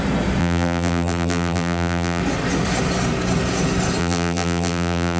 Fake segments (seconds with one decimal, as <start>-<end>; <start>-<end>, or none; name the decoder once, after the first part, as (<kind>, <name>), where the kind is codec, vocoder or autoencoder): 0.4-2.2 (vocoder, BigVGAN v2); 4.0-5.2